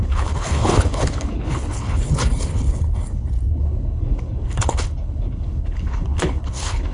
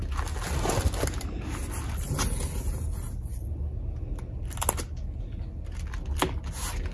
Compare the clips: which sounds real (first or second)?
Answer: second